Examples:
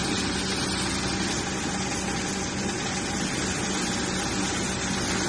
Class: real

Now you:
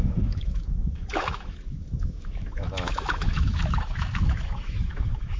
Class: fake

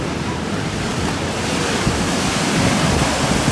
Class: real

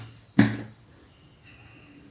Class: real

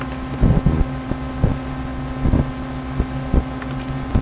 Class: real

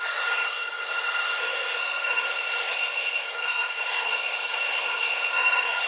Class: fake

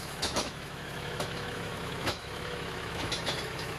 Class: fake